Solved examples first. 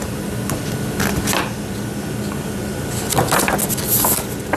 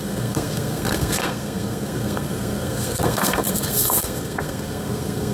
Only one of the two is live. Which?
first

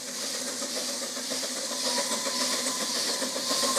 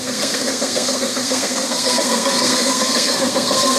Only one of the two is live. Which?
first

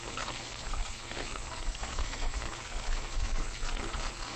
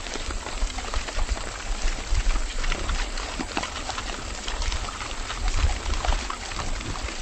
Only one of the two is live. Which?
second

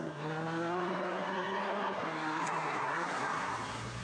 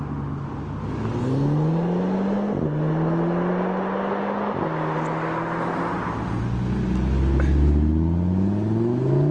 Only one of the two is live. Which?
second